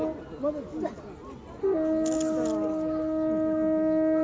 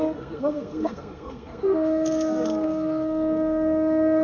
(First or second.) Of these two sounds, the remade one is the second